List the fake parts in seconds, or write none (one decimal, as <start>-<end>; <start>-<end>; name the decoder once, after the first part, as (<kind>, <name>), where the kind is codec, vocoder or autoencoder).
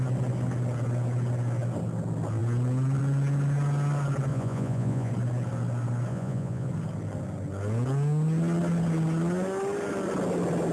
4.3-5.1 (vocoder, Vocos); 6.1-6.7